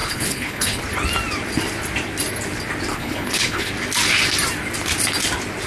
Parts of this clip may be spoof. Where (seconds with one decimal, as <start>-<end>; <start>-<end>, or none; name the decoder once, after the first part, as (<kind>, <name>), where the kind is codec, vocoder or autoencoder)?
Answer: 0.0-0.8 (codec, HILCodec); 2.9-3.7